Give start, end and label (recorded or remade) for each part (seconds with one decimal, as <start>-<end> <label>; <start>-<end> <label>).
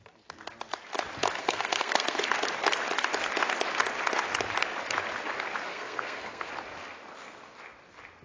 0.0-1.4 recorded; 1.4-2.2 remade; 2.2-5.7 recorded; 5.7-6.5 remade; 6.5-8.2 recorded